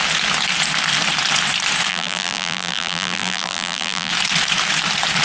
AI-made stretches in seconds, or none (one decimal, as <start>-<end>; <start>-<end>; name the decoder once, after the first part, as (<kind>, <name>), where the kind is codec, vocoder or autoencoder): 1.9-4.1 (vocoder, BigVGAN v2)